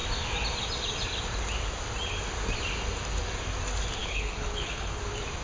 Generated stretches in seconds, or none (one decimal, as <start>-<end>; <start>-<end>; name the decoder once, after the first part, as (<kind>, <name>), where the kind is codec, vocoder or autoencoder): 4.0-5.0 (codec, HILCodec)